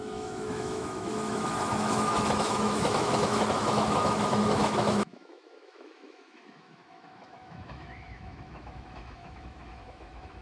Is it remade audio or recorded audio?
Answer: remade